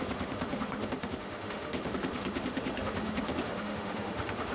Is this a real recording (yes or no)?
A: no